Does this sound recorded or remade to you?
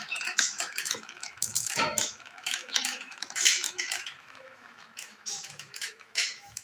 remade